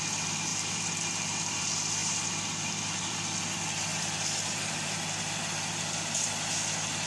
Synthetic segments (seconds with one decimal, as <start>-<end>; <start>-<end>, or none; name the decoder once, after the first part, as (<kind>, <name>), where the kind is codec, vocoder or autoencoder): 0.5-1.6 (vocoder, BigVGAN v2); 2.0-3.1; 3.9-5.0